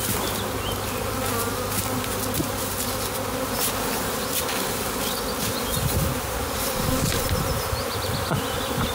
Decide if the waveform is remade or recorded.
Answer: recorded